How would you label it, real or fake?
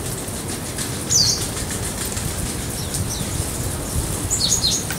real